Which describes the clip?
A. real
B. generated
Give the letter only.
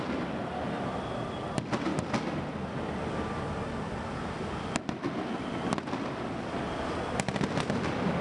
A